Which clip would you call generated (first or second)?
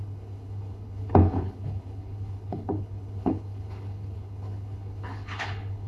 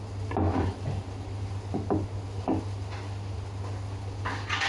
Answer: first